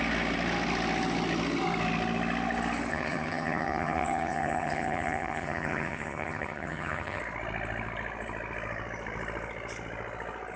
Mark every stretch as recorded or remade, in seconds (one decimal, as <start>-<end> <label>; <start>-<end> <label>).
0.0-2.9 recorded; 2.9-7.2 remade; 7.2-10.6 recorded